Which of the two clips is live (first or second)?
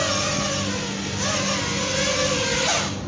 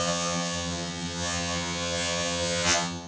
first